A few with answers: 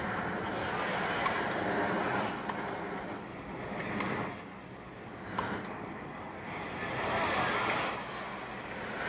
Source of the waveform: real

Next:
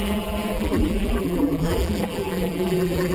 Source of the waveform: fake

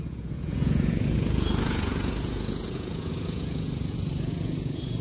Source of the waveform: fake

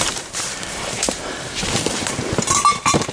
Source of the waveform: fake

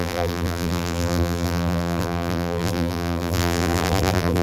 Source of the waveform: fake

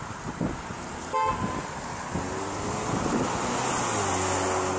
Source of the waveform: real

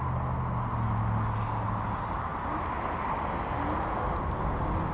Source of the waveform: real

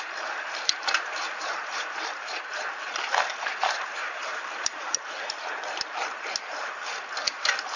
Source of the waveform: fake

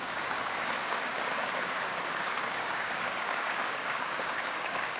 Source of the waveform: fake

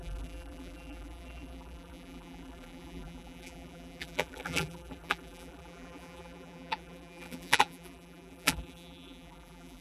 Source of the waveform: fake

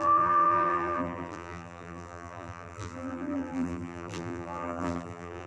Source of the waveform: fake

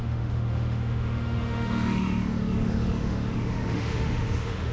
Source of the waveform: fake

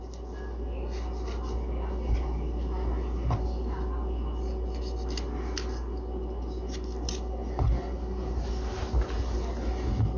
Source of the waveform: real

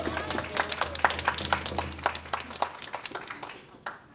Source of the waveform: real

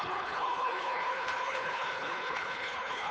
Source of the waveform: fake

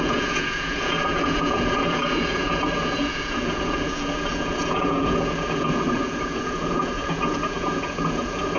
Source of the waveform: fake